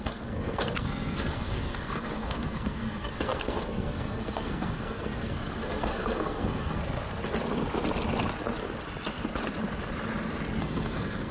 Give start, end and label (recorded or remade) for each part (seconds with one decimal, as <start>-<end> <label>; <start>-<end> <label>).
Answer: 0.0-6.8 remade; 6.8-10.6 recorded; 10.6-11.3 remade